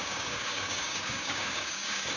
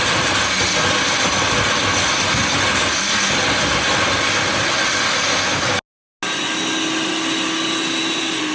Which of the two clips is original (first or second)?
second